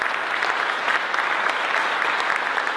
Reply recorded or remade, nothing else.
recorded